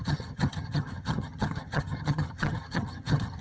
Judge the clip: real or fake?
fake